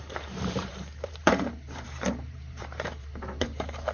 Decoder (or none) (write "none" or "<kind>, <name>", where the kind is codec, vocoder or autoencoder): vocoder, BigVGAN v2